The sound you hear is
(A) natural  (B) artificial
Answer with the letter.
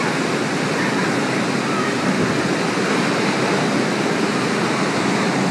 A